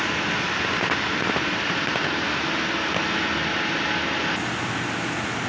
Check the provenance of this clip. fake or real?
real